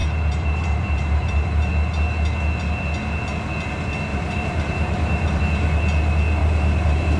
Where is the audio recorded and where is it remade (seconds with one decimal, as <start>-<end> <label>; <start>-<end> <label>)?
0.0-1.7 remade; 1.7-4.1 recorded; 4.1-5.4 remade; 5.4-6.4 recorded; 6.4-7.2 remade